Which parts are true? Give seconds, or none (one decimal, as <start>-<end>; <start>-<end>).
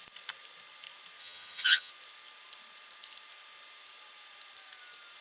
0.0-1.2; 1.9-5.2